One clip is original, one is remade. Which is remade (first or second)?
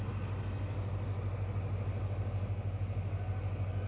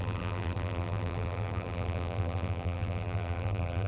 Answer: second